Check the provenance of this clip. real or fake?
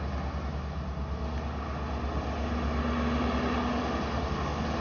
real